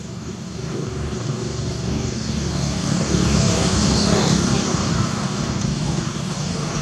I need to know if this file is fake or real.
fake